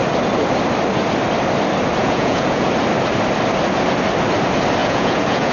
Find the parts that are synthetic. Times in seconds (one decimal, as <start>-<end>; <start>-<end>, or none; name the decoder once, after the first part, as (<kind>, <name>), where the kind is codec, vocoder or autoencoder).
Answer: 2.0-2.7 (vocoder, Vocos); 4.8-5.5